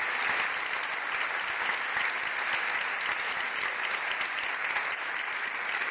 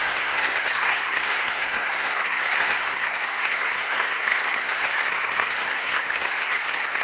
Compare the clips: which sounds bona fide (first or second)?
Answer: first